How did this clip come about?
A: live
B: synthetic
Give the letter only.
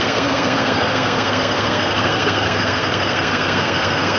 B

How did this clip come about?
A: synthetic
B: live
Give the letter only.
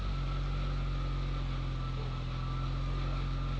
B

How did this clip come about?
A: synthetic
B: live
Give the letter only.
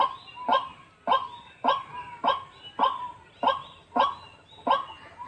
B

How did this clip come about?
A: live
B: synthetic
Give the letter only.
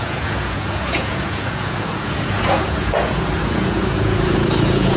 B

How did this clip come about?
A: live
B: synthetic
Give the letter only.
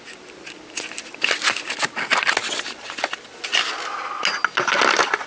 A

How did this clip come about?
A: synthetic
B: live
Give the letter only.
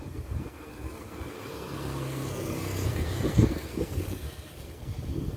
A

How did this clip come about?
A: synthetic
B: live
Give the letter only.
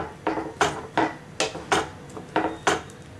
B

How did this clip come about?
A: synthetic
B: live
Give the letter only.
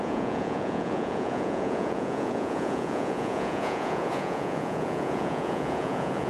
A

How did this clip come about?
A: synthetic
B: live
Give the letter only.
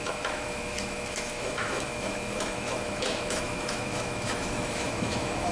A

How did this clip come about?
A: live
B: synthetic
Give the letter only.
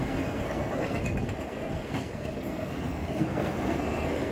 B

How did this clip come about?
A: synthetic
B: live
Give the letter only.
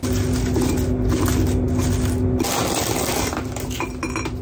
B